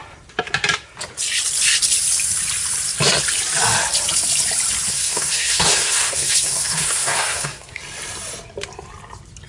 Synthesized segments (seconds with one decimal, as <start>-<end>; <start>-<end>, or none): 4.9-7.8